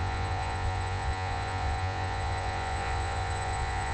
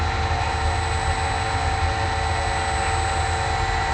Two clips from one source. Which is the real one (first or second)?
second